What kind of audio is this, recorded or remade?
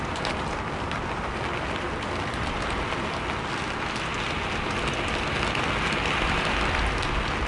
recorded